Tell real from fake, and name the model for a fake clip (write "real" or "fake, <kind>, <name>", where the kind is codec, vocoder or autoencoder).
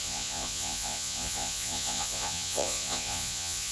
fake, vocoder, Vocos